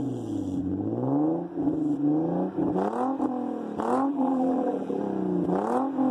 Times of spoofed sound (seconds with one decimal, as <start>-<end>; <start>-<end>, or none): 4.1-5.0